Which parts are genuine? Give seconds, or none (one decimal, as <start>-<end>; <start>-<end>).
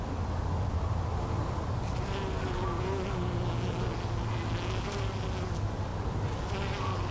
0.0-7.1